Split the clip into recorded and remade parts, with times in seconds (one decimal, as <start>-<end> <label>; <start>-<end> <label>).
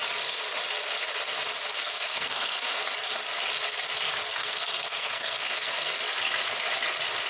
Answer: 0.0-1.7 recorded; 1.7-2.8 remade; 2.8-4.4 recorded; 4.4-6.0 remade; 6.0-7.3 recorded